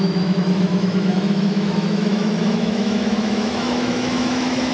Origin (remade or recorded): remade